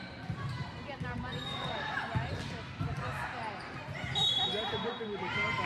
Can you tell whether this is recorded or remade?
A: recorded